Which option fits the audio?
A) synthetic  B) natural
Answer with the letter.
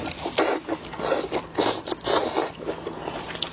B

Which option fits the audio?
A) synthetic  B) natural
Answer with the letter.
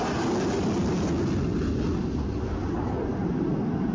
B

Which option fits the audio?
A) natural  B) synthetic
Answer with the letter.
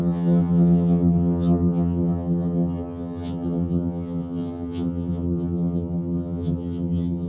B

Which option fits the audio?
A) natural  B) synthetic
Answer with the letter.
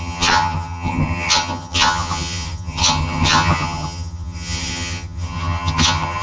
B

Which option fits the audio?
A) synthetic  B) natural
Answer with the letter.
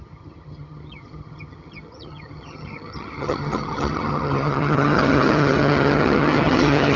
A